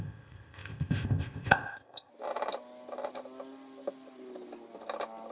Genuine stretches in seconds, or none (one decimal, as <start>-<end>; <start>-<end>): 2.1-5.3